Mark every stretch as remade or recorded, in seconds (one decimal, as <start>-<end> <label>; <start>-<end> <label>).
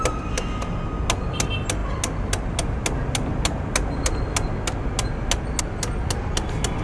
0.0-6.8 recorded